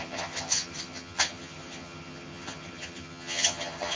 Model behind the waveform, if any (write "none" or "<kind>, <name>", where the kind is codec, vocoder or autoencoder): vocoder, HiFi-GAN